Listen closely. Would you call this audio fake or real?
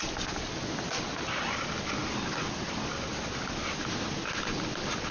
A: real